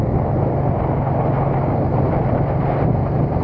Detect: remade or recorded recorded